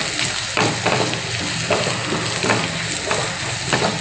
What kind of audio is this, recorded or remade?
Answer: recorded